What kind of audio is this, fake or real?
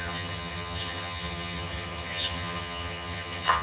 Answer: fake